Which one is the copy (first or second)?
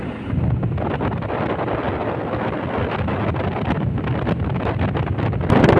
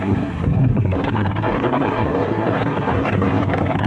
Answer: second